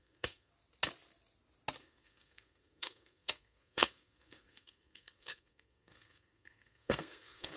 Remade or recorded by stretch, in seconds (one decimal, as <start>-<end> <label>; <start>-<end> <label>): 0.0-0.5 remade; 0.5-1.8 recorded; 1.8-7.6 remade